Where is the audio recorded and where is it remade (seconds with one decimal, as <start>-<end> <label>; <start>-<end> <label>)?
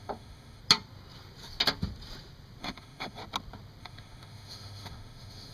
0.0-0.6 remade; 0.6-2.6 recorded; 2.6-3.2 remade; 3.2-3.8 recorded; 3.8-5.5 remade